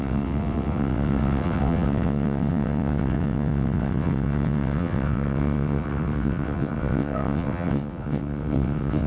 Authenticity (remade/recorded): remade